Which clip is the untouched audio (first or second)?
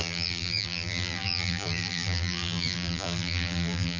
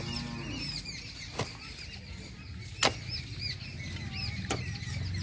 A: second